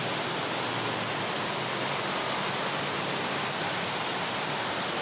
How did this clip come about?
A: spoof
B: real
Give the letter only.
B